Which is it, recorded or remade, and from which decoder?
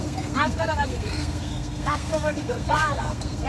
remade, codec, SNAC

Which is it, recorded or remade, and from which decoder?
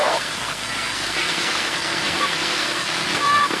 remade, codec, SNAC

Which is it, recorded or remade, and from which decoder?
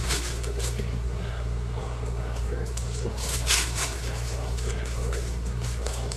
remade, codec, SNAC